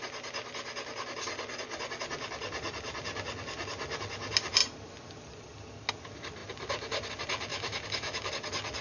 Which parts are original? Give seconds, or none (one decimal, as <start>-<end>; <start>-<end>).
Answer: 0.0-7.5; 8.3-8.8